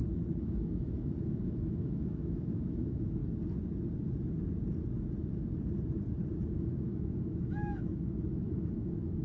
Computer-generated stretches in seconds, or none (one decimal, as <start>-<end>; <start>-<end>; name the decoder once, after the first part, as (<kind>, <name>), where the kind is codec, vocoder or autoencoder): 0.0-3.2 (autoencoder, DAC-VAE); 6.5-9.2